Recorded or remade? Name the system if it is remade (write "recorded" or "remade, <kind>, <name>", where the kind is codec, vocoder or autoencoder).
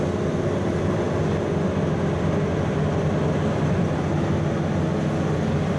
recorded